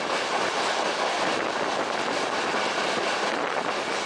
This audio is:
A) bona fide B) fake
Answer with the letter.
A